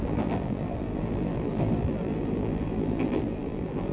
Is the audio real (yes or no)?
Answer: no